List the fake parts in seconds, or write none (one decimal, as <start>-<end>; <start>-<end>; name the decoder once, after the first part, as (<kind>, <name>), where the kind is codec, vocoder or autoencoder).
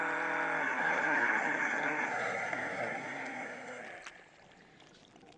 0.6-3.8 (codec, SNAC)